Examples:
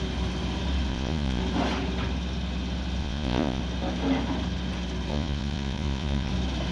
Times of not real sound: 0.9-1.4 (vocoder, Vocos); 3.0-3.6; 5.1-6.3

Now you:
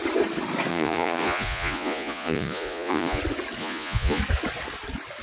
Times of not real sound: 0.7-3.2 (vocoder, Vocos); 3.6-4.2

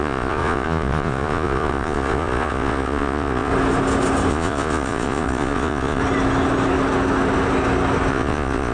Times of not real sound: 0.0-3.5 (vocoder, Vocos); 4.3-6.0; 8.1-8.7

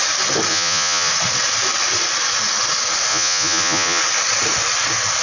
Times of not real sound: 0.5-1.1 (vocoder, Vocos); 3.1-4.0

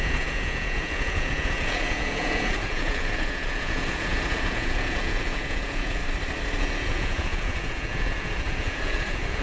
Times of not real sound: 0.0-6.0 (vocoder, Vocos); 6.6-9.4